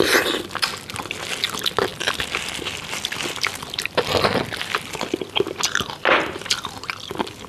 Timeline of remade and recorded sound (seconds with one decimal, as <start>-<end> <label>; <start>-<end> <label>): 0.0-7.5 recorded